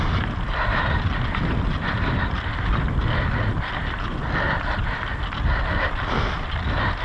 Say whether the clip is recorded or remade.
recorded